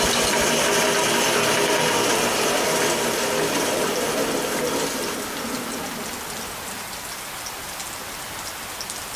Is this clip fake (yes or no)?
no